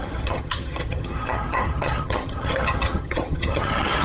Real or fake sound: fake